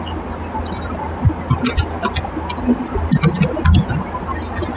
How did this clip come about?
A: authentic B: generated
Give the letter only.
A